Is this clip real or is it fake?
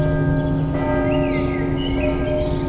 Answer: real